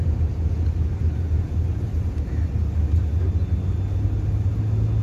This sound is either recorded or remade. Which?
recorded